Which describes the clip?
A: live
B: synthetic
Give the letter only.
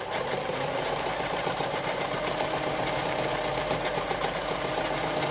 B